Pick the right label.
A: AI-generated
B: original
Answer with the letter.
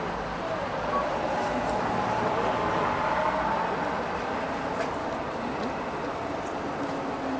B